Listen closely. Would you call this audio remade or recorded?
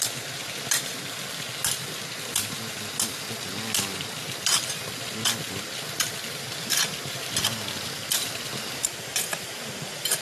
recorded